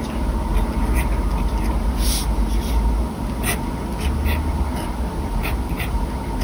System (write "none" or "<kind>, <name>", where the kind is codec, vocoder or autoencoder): none